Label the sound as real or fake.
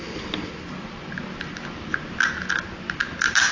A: real